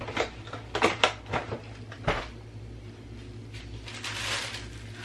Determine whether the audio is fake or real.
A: real